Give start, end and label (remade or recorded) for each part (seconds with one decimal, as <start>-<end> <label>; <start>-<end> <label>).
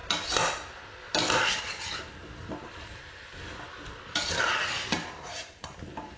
0.0-6.2 recorded